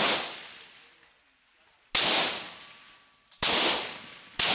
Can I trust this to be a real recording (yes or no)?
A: yes